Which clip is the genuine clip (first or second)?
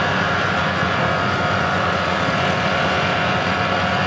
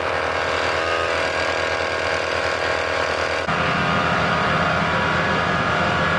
second